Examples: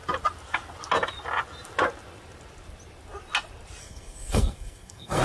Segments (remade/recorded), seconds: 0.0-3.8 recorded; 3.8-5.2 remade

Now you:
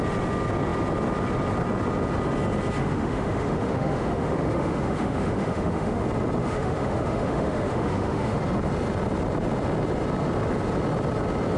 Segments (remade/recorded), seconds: 0.0-2.8 recorded; 2.8-6.0 remade; 6.0-6.4 recorded; 6.4-8.4 remade; 8.4-11.6 recorded

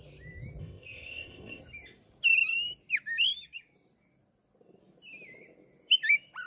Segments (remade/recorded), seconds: 0.0-0.6 recorded; 0.6-1.6 remade; 1.6-6.5 recorded